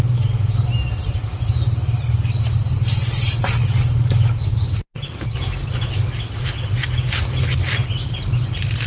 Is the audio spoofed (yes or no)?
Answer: no